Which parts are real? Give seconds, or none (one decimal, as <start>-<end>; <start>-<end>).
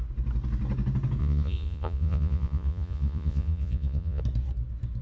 0.0-1.2; 4.2-5.0